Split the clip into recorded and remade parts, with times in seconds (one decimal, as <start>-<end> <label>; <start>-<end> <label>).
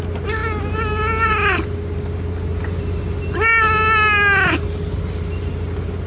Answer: 0.0-6.1 recorded